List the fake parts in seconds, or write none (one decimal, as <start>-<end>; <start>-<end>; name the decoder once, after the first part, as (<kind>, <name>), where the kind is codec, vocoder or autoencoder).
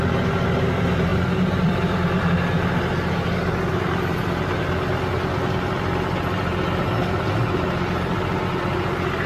1.1-2.3 (vocoder, BigVGAN v2)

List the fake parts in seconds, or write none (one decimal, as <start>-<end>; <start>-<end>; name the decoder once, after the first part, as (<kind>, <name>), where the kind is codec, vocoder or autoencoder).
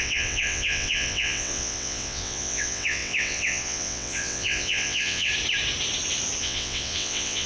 0.0-5.3 (vocoder, WaveNeXt); 6.4-7.5